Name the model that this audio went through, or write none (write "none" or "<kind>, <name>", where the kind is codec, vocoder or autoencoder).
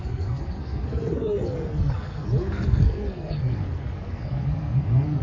codec, SNAC